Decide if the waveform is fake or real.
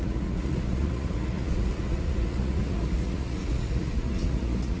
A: fake